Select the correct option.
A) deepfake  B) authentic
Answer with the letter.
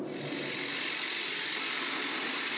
B